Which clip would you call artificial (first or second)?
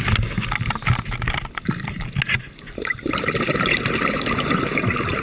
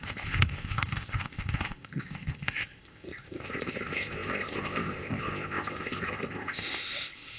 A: second